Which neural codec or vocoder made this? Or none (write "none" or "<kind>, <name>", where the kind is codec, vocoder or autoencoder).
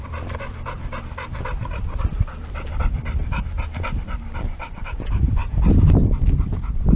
vocoder, BigVGAN v2